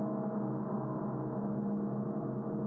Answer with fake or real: real